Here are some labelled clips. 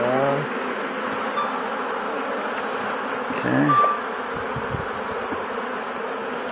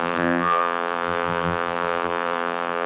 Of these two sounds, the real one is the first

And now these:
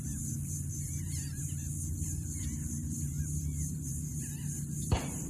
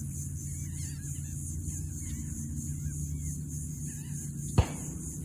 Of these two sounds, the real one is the second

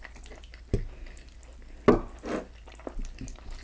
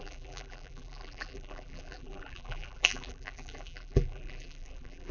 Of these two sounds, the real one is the first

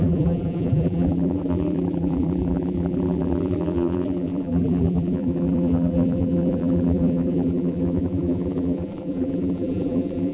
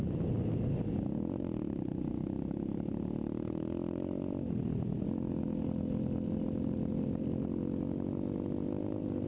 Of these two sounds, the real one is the second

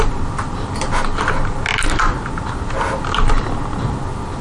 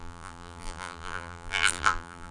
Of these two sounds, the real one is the first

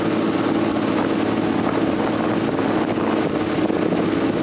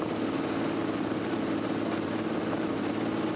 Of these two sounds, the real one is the first